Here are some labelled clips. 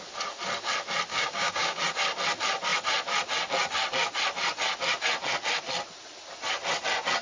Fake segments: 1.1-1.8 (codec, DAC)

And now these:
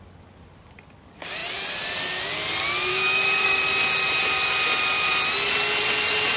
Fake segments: 2.9-3.6 (codec, DAC)